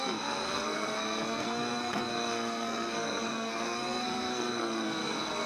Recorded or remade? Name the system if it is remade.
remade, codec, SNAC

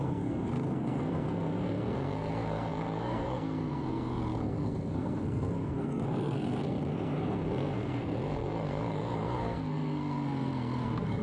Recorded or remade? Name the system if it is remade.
remade, codec, SNAC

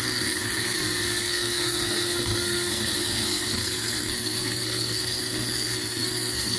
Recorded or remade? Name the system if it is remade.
remade, codec, SNAC